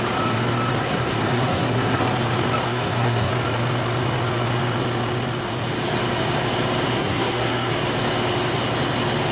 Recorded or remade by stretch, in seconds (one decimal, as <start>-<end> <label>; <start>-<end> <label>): 0.0-0.8 recorded; 0.8-2.0 remade; 2.0-2.6 recorded; 2.6-3.3 remade; 3.3-6.9 recorded; 6.9-7.7 remade; 7.7-9.3 recorded